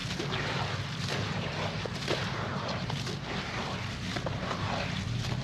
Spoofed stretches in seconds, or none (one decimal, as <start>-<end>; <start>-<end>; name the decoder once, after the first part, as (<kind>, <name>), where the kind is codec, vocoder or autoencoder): none